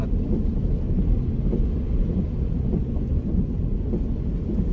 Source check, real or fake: real